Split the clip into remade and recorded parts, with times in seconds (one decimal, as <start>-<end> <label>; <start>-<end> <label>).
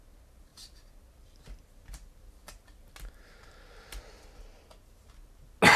0.0-5.8 recorded